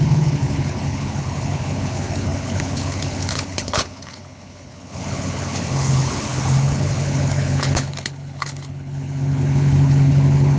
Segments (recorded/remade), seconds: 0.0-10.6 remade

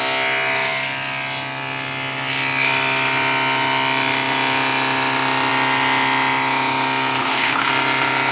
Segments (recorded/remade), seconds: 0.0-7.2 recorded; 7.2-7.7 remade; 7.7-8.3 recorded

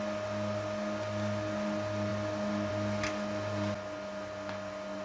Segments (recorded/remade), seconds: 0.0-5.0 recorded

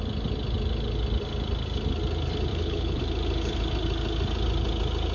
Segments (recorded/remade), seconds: 0.0-2.5 recorded; 2.5-3.0 remade; 3.0-5.1 recorded

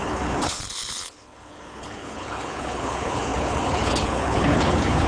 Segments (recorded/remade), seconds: 0.0-5.1 remade

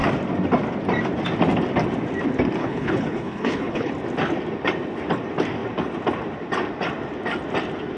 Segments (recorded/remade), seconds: 0.0-2.6 recorded; 2.6-3.9 remade; 3.9-8.0 recorded